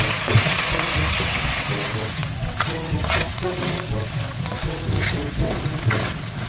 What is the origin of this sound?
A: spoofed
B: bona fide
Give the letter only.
A